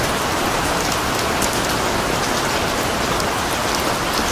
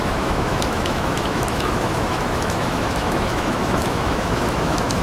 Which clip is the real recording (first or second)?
first